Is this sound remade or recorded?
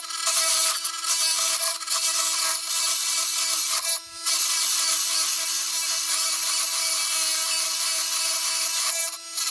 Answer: recorded